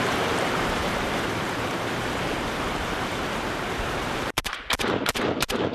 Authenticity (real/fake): fake